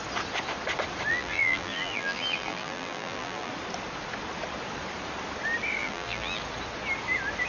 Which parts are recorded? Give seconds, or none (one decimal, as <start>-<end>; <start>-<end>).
0.0-1.1; 3.5-5.8; 6.4-7.5